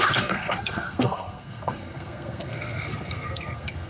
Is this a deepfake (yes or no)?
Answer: yes